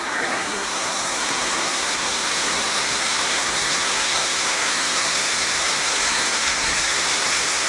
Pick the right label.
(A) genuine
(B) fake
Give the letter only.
B